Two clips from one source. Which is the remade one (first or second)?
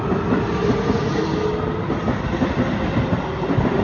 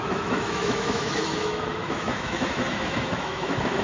second